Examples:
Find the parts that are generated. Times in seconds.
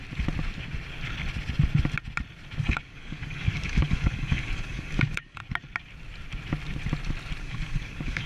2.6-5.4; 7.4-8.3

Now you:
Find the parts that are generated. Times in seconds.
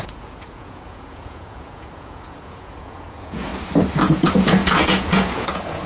0.0-3.5; 4.0-5.9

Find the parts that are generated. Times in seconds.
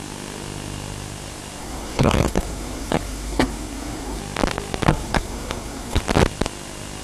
1.6-4.2; 4.9-6.0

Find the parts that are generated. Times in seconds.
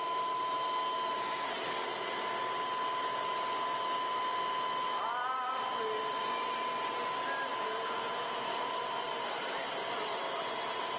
7.5-8.6